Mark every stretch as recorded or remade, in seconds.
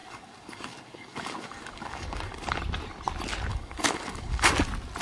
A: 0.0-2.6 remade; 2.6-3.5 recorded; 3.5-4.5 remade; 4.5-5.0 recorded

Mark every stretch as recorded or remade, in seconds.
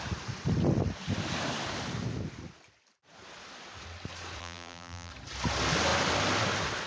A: 0.0-4.4 recorded; 4.4-5.1 remade; 5.1-6.9 recorded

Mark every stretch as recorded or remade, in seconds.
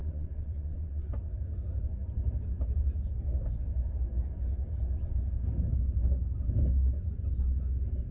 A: 0.0-1.1 remade; 1.1-8.1 recorded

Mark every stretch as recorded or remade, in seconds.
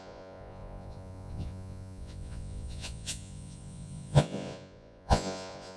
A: 0.0-5.8 remade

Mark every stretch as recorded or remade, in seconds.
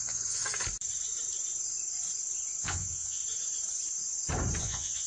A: 0.0-0.4 remade; 0.4-2.6 recorded; 2.6-3.2 remade; 3.2-4.6 recorded; 4.6-5.1 remade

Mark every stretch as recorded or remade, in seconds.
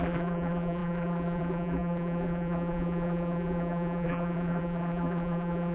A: 0.0-5.7 remade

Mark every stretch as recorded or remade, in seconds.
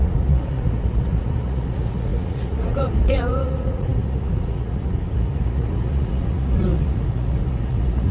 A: 0.0-8.1 remade